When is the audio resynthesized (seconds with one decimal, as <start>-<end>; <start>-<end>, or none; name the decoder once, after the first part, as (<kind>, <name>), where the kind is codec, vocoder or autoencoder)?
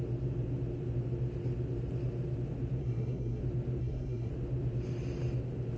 2.8-3.4 (codec, SNAC); 3.8-4.3